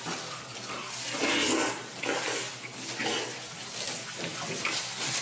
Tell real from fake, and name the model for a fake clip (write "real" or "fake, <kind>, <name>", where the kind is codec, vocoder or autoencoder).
real